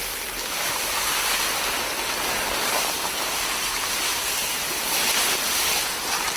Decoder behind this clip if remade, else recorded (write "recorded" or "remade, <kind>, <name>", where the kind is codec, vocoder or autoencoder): recorded